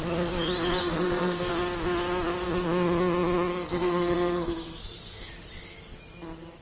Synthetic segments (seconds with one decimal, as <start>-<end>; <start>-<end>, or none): 0.8-1.5; 3.5-5.3